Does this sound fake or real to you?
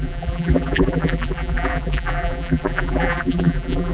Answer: fake